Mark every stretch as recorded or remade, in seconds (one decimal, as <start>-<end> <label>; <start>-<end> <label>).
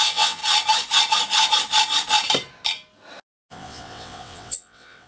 0.0-0.4 remade; 0.4-3.5 recorded; 3.5-5.1 remade